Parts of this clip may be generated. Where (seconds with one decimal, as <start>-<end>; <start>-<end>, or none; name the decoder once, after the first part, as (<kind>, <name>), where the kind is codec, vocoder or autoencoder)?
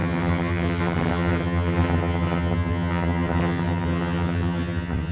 0.0-5.1 (vocoder, HiFi-GAN)